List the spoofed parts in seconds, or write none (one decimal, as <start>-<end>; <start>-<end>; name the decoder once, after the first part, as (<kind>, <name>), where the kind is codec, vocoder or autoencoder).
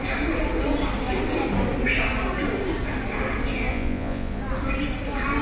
3.7-4.4 (vocoder, Vocos)